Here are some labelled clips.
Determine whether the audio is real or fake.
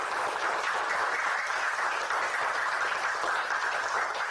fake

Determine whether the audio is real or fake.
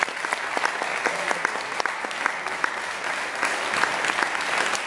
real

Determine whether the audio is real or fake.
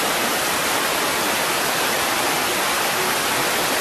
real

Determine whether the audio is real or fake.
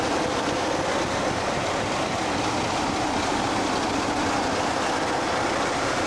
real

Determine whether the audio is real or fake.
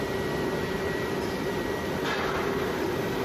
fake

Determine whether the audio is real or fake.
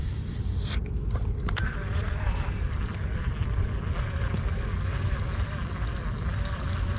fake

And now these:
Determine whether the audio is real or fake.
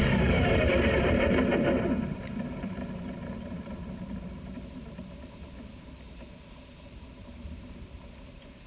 fake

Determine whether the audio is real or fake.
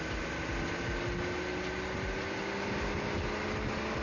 real